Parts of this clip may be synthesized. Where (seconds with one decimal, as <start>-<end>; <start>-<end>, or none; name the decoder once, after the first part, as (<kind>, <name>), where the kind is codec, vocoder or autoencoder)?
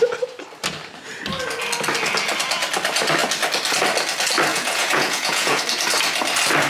4.5-5.6 (vocoder, Vocos)